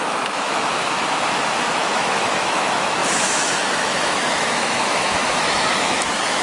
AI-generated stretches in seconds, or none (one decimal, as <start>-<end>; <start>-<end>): 0.0-6.4